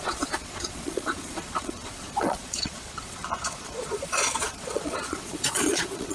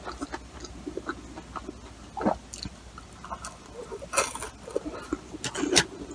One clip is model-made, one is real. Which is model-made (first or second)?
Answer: first